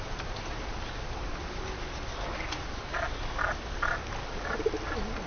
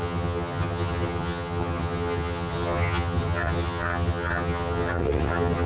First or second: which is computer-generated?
second